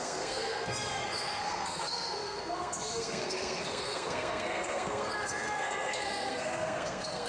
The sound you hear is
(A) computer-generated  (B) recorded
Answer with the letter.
A